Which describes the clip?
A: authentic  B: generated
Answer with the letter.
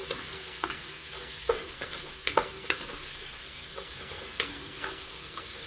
B